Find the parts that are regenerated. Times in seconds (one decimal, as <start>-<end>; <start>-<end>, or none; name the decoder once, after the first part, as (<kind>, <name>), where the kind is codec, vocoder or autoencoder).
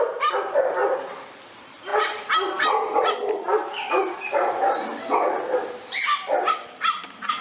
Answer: 0.0-7.4 (vocoder, BigVGAN v2)